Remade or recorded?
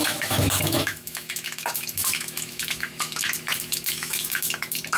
remade